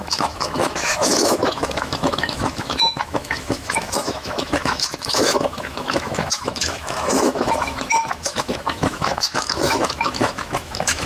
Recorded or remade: remade